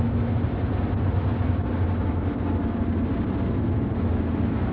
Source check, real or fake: real